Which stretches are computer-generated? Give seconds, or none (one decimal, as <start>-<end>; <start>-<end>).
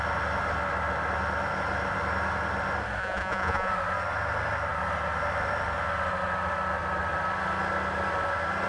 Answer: 3.0-3.7